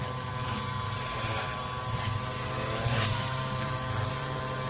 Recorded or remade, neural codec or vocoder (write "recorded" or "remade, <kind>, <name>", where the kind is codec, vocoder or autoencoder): remade, vocoder, BigVGAN v2